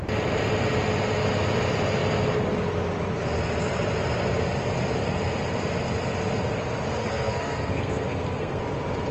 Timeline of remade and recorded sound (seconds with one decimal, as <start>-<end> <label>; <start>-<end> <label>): 0.0-6.9 recorded; 6.9-8.6 remade; 8.6-9.1 recorded